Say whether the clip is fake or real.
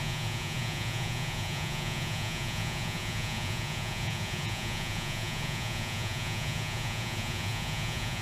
fake